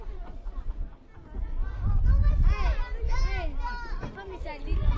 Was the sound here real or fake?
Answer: real